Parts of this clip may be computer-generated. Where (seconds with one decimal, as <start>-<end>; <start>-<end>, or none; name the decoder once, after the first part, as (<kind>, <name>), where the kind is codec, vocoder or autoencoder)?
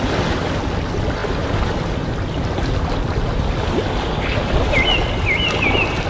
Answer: none